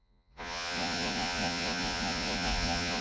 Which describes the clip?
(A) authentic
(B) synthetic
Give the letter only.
B